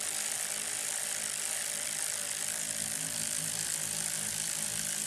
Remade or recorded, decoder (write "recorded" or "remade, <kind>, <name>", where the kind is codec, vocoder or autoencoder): recorded